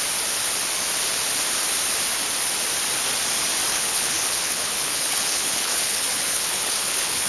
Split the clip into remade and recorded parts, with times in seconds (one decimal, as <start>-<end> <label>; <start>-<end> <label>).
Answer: 0.0-3.7 recorded; 3.7-7.3 remade